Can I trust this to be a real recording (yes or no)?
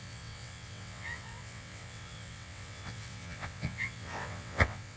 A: no